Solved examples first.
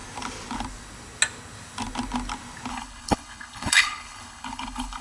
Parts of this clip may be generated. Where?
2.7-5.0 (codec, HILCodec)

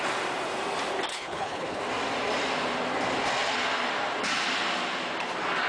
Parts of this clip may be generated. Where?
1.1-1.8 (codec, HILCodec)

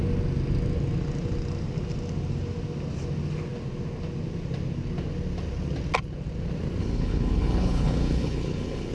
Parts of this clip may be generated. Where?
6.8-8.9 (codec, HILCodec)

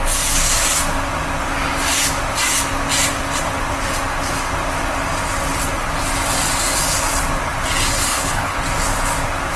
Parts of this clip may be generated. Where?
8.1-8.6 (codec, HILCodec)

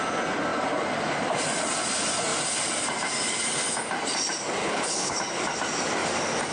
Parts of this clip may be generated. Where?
4.6-5.2 (codec, HILCodec)